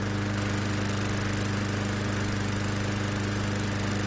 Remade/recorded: recorded